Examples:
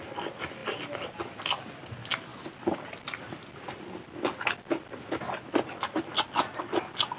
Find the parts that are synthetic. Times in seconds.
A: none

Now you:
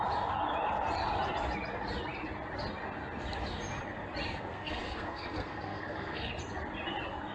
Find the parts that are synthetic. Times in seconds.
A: 4.5-6.3 (codec, SNAC)

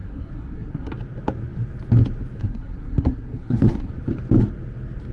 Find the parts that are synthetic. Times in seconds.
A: 0.0-0.9 (codec, SNAC); 2.4-3.9

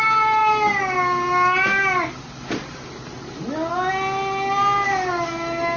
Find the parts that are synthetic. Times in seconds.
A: none

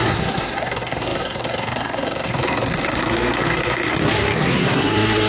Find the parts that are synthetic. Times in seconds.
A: 0.0-5.3 (codec, SNAC)

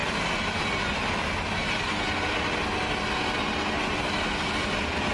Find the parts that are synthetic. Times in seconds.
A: none

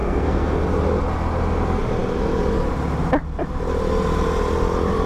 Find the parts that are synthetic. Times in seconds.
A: 0.0-0.6 (codec, SNAC)

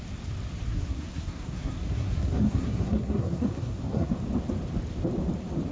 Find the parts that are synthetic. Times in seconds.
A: 0.7-4.1 (codec, SNAC)